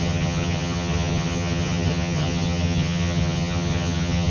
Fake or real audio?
fake